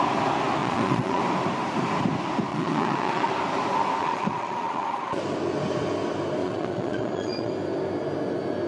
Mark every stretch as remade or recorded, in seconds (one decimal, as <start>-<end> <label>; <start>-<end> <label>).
0.0-0.6 recorded; 0.6-1.2 remade; 1.2-2.5 recorded; 2.5-3.3 remade; 3.3-4.0 recorded; 4.0-5.2 remade; 5.2-6.4 recorded; 6.4-7.5 remade; 7.5-8.7 recorded